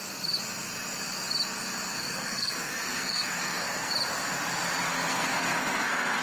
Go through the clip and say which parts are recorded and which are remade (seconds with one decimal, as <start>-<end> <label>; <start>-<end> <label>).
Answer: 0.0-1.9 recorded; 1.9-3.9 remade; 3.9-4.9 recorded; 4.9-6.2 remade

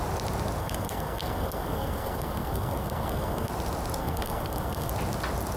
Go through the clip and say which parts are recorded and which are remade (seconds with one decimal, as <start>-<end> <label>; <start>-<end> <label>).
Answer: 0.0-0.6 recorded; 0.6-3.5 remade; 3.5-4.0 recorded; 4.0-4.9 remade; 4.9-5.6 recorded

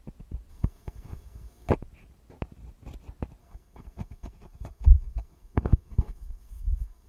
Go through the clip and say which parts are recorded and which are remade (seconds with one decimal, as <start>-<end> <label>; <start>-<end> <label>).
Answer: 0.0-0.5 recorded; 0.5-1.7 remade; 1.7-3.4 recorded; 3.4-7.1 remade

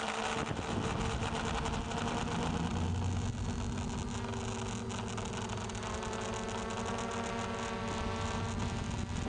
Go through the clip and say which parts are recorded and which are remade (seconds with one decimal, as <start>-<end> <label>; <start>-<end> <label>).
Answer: 0.0-9.3 recorded